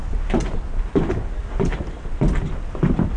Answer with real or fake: real